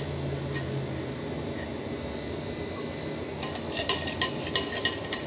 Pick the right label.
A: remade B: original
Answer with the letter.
B